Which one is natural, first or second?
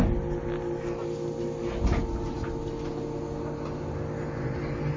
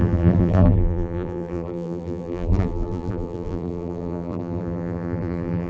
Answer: first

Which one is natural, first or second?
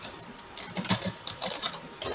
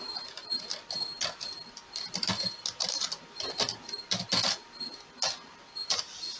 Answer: second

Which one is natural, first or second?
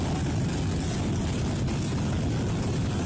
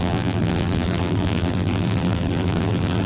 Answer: first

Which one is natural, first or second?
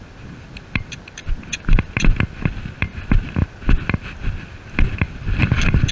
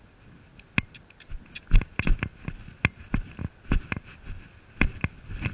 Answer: second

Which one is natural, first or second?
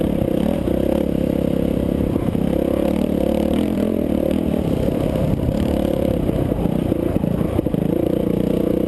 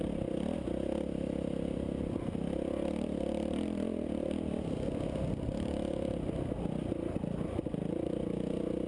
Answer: second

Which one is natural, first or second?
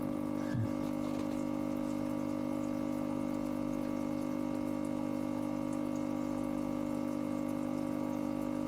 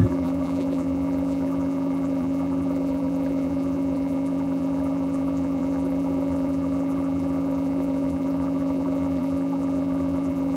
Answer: first